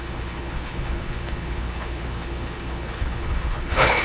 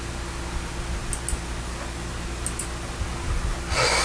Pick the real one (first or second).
second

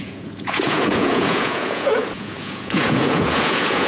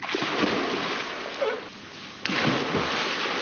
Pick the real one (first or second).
second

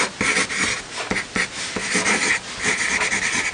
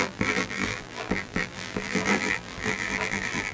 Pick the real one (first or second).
first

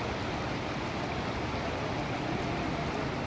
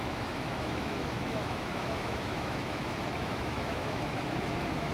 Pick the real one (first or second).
first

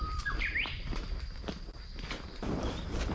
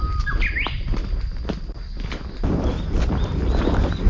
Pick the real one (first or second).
second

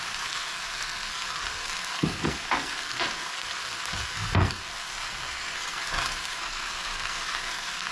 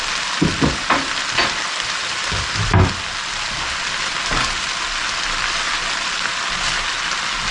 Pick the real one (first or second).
second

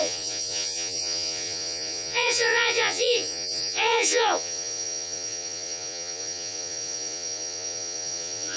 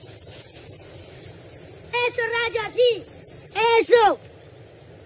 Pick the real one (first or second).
second